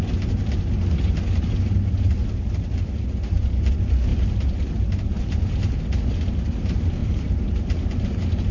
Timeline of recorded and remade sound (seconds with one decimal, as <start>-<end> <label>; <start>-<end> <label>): 0.0-4.1 recorded; 4.1-5.8 remade; 5.8-7.0 recorded; 7.0-7.5 remade; 7.5-8.5 recorded